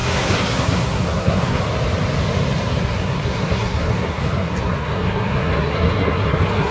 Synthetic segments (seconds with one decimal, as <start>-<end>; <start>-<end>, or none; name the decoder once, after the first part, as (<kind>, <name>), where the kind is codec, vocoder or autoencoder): 0.0-1.6 (codec, SNAC); 2.7-6.7